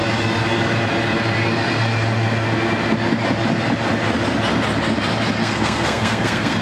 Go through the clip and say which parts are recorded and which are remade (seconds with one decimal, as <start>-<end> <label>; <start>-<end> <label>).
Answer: 0.0-5.4 recorded; 5.4-6.6 remade